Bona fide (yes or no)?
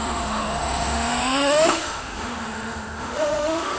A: no